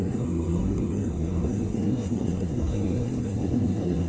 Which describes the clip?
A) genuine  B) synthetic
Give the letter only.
B